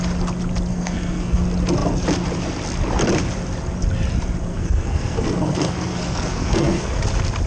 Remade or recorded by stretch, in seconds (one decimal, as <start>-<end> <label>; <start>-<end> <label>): 0.0-0.7 recorded; 0.7-1.4 remade; 1.4-4.5 recorded; 4.5-7.0 remade; 7.0-7.5 recorded